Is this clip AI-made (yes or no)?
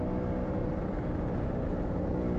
no